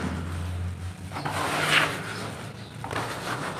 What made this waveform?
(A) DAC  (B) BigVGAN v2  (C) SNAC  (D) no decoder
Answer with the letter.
D